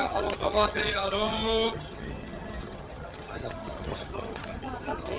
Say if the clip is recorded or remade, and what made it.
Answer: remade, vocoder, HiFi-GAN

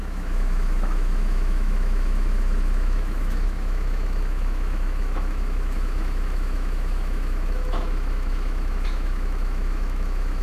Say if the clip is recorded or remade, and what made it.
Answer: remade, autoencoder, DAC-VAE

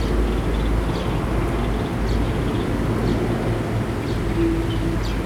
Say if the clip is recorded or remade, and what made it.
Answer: recorded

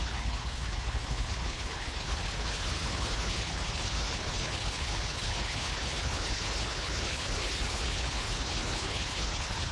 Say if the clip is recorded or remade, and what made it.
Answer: remade, codec, HILCodec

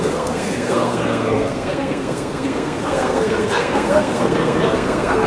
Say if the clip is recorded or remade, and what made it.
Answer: remade, codec, SNAC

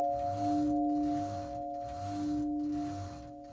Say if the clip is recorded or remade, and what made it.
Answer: recorded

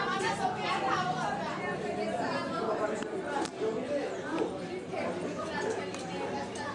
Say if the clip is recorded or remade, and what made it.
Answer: recorded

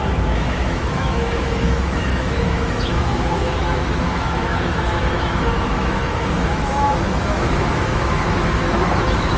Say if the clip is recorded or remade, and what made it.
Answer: remade, autoencoder, DAC-VAE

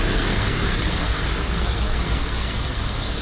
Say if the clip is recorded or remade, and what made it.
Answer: remade, codec, SNAC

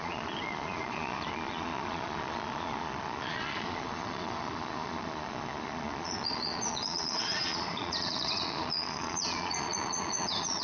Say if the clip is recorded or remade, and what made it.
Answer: remade, vocoder, Vocos